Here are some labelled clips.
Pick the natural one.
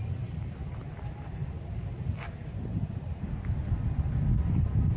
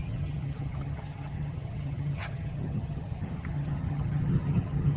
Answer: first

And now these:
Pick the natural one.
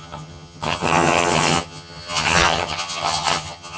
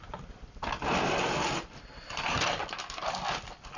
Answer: second